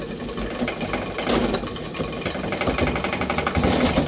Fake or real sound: real